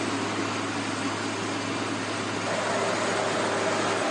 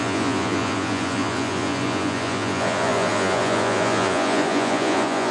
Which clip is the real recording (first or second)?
first